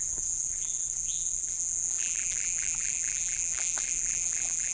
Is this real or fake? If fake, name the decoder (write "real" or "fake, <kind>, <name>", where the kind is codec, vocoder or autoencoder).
fake, vocoder, BigVGAN v2